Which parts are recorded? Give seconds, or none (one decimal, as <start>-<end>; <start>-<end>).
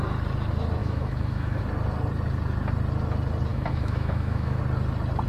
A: 0.0-0.8; 1.6-3.5; 4.6-5.3